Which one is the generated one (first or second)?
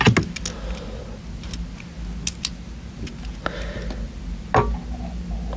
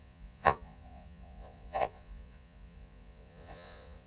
second